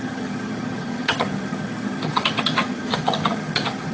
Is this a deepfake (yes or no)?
yes